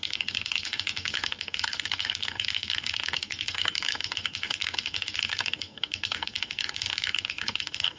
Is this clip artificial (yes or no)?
yes